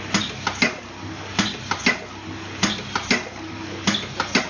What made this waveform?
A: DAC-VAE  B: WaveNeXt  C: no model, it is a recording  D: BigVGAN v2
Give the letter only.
C